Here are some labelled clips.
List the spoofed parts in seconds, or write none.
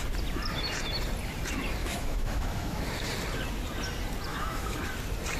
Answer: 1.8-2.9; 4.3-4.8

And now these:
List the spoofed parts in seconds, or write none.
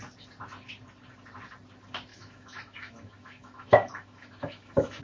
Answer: 2.1-5.0